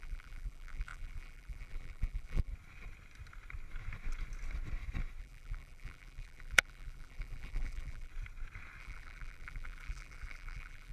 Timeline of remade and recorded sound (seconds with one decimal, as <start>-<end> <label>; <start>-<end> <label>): 0.0-2.5 remade; 2.5-5.2 recorded; 5.2-8.1 remade; 8.1-8.8 recorded; 8.8-10.9 remade